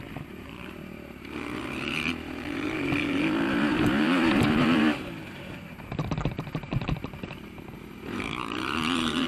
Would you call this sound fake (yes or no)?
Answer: yes